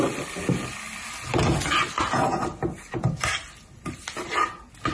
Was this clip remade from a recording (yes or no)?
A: no